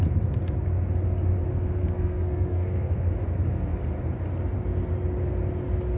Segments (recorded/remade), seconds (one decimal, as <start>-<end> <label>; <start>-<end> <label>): 0.0-1.5 recorded; 1.5-3.1 remade; 3.1-6.0 recorded